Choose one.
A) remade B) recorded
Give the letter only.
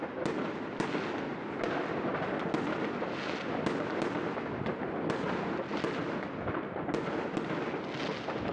B